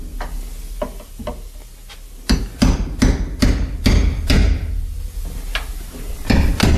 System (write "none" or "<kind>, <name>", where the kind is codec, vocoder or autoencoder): none